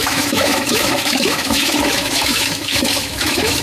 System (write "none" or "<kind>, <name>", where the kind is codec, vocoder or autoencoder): autoencoder, DAC-VAE